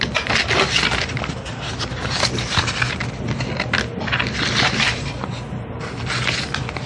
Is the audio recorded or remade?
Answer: recorded